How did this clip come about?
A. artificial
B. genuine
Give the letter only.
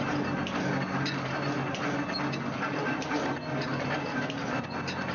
B